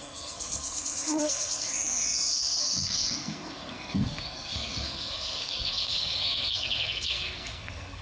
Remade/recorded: remade